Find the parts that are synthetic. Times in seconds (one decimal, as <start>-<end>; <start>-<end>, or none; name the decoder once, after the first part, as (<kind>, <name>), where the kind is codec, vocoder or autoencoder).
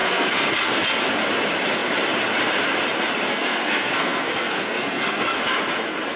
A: 0.0-0.5 (codec, SNAC); 3.3-5.4